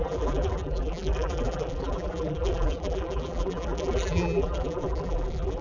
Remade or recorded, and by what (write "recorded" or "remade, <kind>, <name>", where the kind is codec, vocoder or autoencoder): remade, vocoder, BigVGAN v2